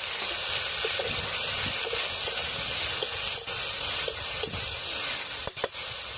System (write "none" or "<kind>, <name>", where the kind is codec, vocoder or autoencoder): none